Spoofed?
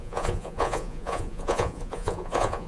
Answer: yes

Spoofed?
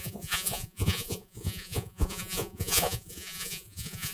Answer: yes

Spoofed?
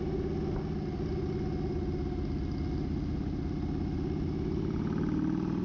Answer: no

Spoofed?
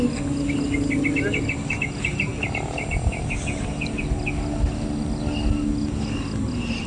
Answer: no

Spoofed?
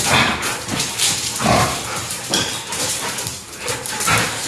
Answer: yes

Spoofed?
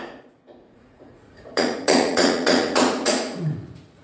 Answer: yes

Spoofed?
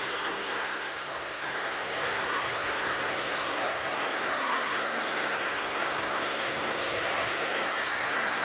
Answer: yes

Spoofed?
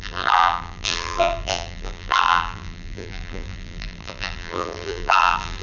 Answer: yes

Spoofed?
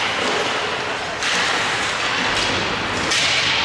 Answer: no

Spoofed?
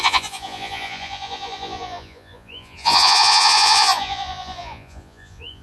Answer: yes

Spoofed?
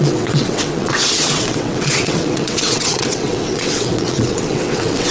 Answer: yes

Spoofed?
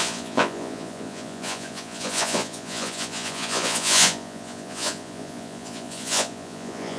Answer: yes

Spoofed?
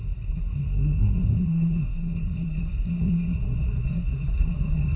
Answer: yes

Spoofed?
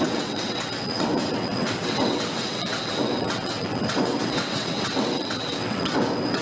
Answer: yes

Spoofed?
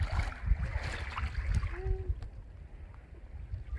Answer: no